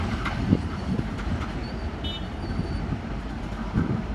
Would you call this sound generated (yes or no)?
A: no